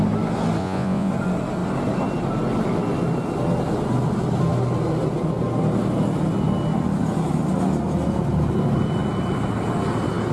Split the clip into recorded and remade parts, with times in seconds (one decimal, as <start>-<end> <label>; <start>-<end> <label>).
0.0-0.6 recorded; 0.6-1.1 remade; 1.1-10.3 recorded

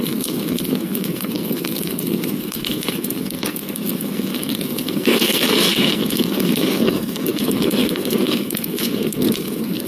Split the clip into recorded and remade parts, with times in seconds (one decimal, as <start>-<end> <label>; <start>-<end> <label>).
0.0-9.9 remade

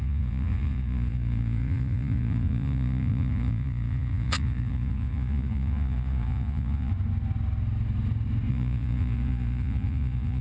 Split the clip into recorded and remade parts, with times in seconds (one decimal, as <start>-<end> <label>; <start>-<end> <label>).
0.0-6.9 remade; 6.9-8.5 recorded; 8.5-10.4 remade